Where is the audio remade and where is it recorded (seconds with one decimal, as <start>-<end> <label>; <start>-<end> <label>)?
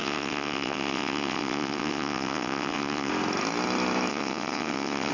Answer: 0.0-3.1 remade; 3.1-4.1 recorded; 4.1-5.1 remade